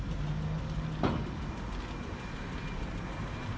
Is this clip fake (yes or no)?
no